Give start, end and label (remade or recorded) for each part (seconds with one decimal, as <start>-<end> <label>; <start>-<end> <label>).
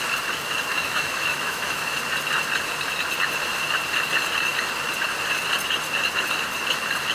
0.0-0.7 recorded; 0.7-2.0 remade; 2.0-7.1 recorded